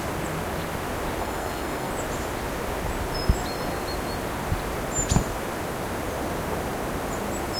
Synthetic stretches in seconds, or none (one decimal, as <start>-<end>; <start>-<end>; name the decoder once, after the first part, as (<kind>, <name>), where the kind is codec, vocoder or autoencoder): 1.2-1.9 (codec, SNAC)